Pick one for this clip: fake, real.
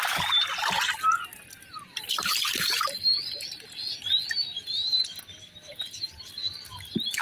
real